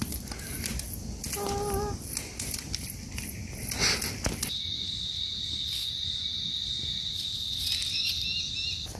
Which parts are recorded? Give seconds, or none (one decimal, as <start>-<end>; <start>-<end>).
0.0-9.0